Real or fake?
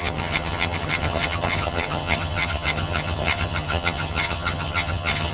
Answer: fake